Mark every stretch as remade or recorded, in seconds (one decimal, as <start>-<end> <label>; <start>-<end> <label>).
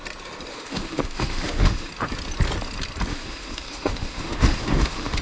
0.0-0.5 recorded; 0.5-1.9 remade; 1.9-3.1 recorded; 3.1-5.2 remade